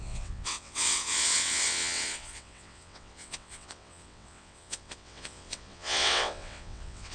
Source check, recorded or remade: remade